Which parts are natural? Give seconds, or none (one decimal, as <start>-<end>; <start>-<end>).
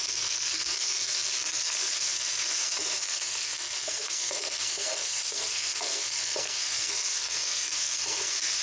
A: none